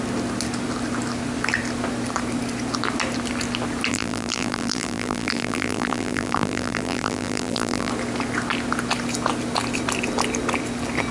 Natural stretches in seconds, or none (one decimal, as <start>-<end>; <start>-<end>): 0.0-3.9; 7.9-11.1